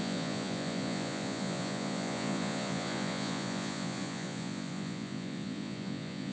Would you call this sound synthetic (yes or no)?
yes